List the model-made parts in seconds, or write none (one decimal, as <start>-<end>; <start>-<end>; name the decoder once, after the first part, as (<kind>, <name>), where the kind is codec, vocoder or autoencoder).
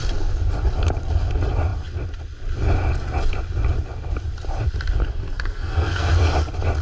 5.0-6.1 (codec, SNAC)